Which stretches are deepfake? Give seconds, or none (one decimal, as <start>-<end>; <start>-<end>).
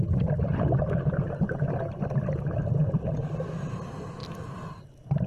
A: 2.0-3.7